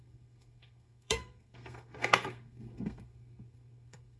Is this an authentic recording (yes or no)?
no